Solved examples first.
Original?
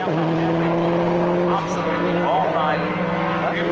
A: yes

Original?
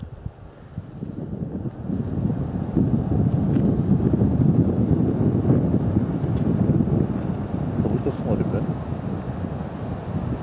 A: yes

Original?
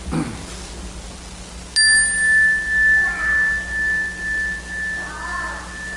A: yes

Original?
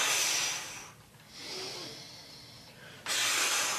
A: yes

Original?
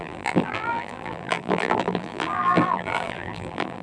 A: no